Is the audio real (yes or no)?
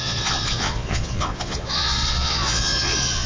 no